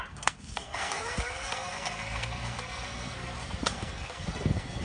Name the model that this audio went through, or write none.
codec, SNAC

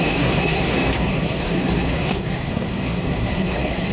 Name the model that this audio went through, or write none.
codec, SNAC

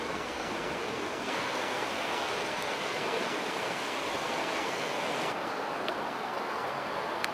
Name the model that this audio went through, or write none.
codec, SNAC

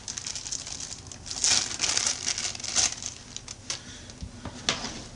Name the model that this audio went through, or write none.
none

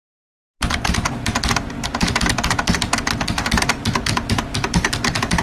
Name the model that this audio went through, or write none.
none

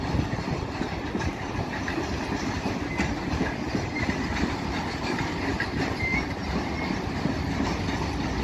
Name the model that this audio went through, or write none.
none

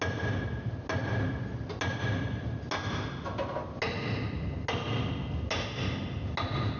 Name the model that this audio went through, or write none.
none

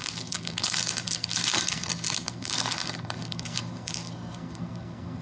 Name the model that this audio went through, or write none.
codec, SNAC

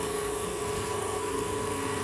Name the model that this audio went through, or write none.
codec, SNAC